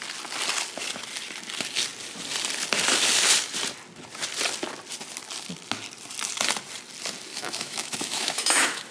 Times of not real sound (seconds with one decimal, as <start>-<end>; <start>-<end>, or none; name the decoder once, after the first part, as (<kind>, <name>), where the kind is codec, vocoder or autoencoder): 7.3-8.9 (autoencoder, DAC-VAE)